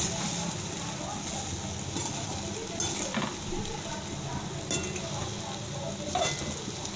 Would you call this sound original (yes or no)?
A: yes